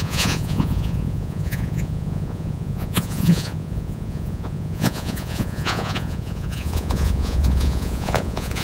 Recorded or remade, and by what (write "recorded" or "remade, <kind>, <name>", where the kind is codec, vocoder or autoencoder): remade, vocoder, Vocos